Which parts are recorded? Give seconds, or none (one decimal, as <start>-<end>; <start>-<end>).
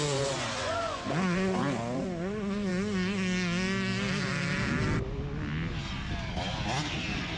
2.7-7.4